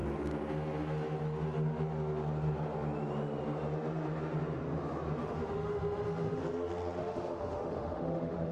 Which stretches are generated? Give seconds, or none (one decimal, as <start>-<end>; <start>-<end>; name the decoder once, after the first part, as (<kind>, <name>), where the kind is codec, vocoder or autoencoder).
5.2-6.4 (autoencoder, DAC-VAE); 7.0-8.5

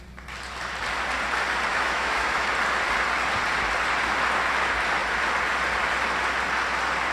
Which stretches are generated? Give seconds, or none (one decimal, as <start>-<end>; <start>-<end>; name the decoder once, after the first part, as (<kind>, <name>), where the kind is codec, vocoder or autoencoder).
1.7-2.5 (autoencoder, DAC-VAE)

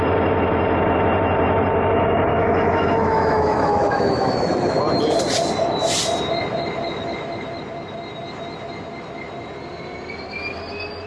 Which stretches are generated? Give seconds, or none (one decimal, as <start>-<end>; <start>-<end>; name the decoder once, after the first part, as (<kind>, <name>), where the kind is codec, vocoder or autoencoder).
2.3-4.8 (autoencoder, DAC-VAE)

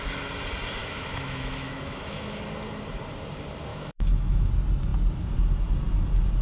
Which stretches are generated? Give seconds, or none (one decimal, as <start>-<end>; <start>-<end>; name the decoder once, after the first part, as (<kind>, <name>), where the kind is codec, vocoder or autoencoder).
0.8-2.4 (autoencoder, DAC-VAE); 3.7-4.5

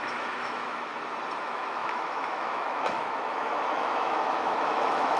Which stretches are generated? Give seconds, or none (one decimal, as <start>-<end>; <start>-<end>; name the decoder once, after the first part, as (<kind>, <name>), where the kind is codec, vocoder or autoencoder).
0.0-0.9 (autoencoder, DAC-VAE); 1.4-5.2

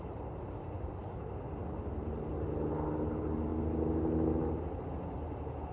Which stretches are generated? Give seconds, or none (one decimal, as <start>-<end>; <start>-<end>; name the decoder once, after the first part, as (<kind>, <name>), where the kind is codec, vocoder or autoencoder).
none

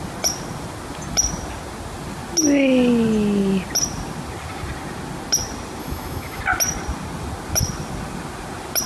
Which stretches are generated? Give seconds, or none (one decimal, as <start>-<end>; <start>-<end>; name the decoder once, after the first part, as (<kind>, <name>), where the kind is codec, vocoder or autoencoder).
5.8-6.4 (autoencoder, DAC-VAE)

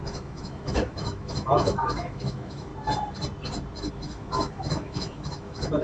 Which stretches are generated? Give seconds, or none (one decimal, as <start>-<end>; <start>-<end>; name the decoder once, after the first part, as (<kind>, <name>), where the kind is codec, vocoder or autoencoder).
0.0-2.7 (autoencoder, DAC-VAE); 3.9-5.8